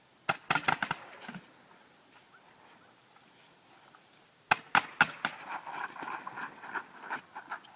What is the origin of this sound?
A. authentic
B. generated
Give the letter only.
A